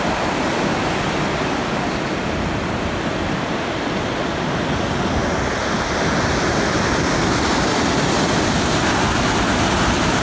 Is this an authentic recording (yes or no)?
yes